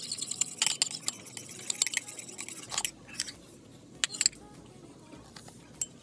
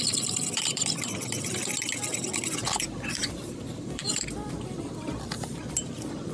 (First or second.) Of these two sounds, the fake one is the second